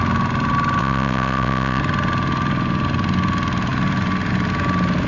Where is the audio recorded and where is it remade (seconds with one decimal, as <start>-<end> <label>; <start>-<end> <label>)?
0.0-0.8 recorded; 0.8-1.8 remade; 1.8-5.1 recorded

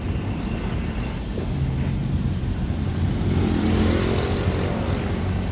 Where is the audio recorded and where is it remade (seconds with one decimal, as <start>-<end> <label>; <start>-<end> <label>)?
0.0-2.0 recorded; 2.0-5.5 remade